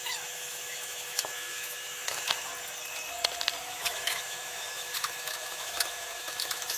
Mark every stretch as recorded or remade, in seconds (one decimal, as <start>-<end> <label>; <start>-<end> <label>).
0.0-2.5 remade; 2.5-3.6 recorded; 3.6-6.8 remade